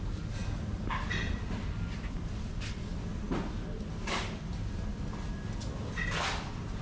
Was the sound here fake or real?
real